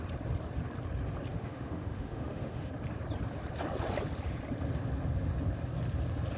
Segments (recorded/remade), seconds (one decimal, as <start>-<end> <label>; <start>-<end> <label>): 0.0-1.3 recorded; 1.3-2.7 remade; 2.7-6.4 recorded